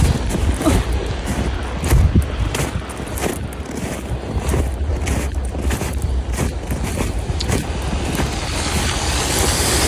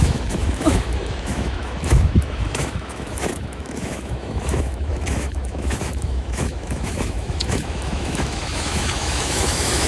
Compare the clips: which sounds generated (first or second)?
second